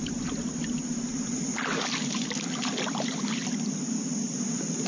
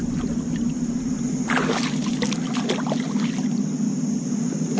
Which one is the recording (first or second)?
second